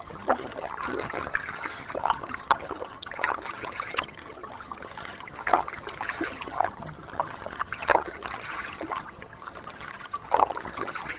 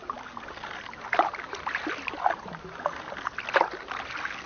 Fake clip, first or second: first